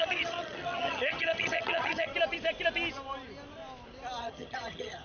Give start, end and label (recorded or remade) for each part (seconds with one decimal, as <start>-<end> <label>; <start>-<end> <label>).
0.0-2.1 remade; 2.1-4.2 recorded; 4.2-5.0 remade